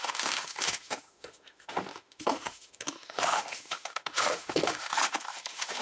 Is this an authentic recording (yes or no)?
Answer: no